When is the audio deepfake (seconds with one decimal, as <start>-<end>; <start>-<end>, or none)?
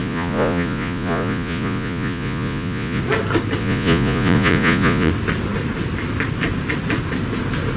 0.0-3.0; 3.6-5.1